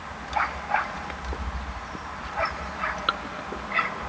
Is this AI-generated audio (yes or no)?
no